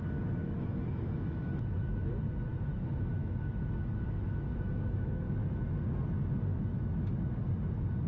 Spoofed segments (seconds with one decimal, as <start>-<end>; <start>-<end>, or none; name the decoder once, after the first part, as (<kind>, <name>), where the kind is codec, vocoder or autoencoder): 0.4-2.1 (autoencoder, DAC-VAE); 2.5-5.2; 6.5-7.3